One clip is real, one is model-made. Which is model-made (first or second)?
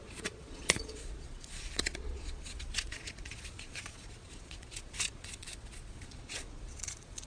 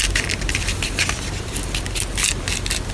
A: first